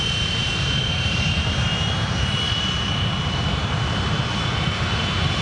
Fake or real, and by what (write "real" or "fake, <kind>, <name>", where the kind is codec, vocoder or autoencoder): fake, vocoder, BigVGAN v2